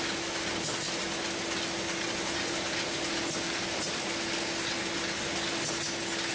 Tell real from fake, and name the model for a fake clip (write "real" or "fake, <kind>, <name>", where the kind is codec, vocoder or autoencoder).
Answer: real